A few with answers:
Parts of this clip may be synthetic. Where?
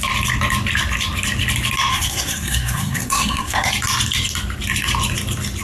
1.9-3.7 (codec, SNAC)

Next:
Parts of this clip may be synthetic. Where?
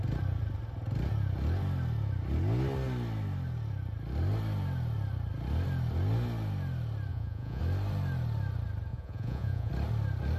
7.1-7.6 (vocoder, Vocos); 8.9-9.7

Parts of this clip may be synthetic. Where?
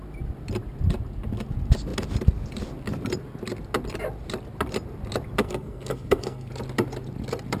5.4-6.5 (codec, SNAC)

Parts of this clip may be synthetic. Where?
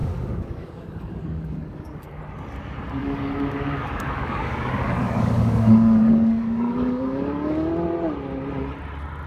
0.0-2.2 (codec, DAC); 3.0-7.7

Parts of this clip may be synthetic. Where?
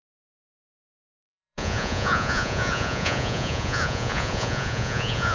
0.0-5.3 (vocoder, Vocos)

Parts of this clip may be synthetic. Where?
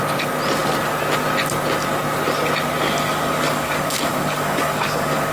3.1-5.3 (codec, DAC)